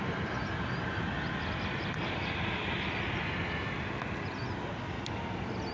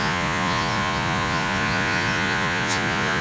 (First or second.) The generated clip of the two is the second